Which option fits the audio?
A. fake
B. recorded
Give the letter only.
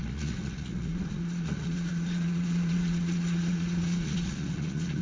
A